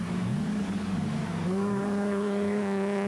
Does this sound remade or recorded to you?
remade